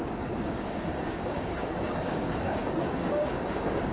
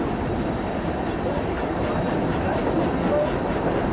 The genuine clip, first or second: second